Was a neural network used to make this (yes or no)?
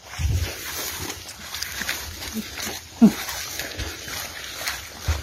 no